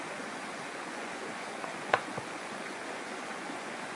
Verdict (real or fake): fake